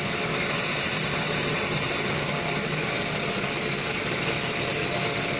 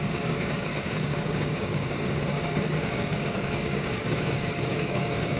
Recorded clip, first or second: first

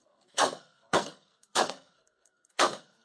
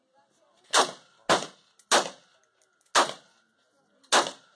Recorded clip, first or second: second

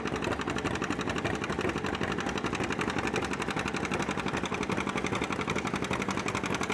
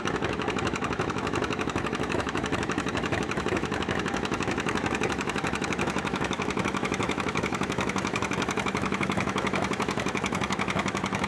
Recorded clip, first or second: first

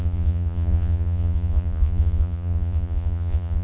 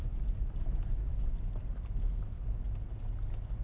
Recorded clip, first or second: second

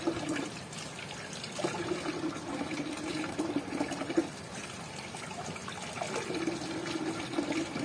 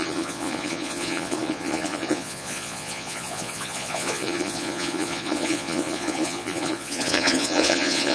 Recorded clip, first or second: first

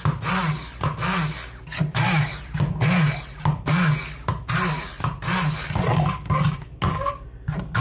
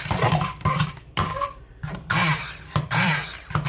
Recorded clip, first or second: first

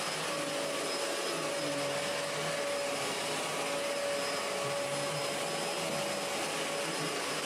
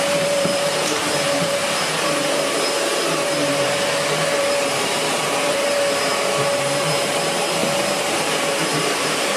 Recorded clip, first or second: first